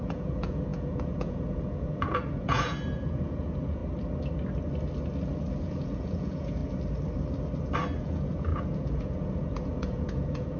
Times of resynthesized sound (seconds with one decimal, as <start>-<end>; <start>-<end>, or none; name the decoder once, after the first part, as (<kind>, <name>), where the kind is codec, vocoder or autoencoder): 0.0-3.8 (vocoder, Vocos); 5.6-6.6; 8.0-10.6